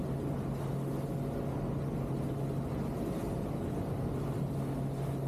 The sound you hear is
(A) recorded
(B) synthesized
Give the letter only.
A